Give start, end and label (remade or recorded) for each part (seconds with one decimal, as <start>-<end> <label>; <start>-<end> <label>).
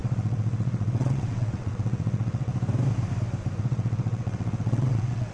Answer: 0.0-2.5 remade; 2.5-3.6 recorded; 3.6-5.3 remade